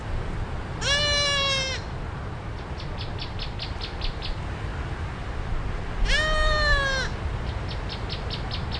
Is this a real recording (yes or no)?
yes